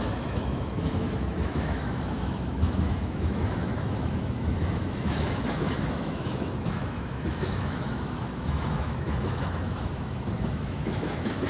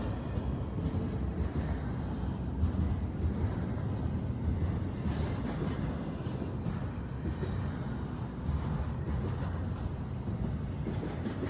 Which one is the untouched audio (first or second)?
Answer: second